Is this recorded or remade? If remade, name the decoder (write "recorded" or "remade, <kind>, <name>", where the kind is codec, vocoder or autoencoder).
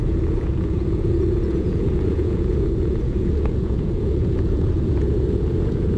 remade, vocoder, Vocos